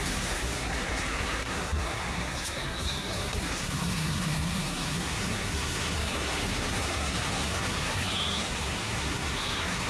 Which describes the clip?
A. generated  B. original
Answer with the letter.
A